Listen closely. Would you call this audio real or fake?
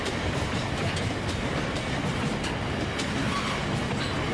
real